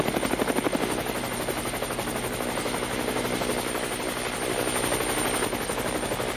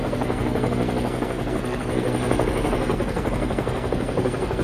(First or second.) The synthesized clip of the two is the second